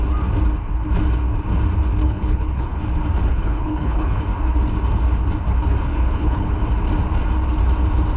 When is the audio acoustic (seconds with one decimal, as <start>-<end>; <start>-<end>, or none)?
0.0-2.0; 2.8-3.3; 4.2-5.9; 6.5-8.2

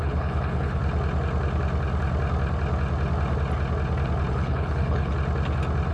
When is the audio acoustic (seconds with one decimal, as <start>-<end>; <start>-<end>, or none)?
0.8-4.3; 5.1-5.9

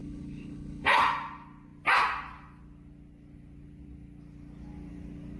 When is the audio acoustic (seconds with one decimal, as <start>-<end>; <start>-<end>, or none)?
1.0-5.4